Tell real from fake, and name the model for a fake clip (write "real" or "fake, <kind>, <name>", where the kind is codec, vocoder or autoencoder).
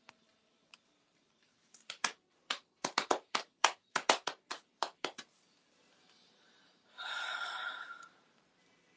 fake, vocoder, BigVGAN v2